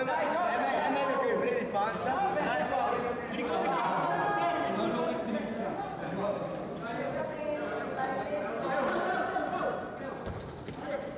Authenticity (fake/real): real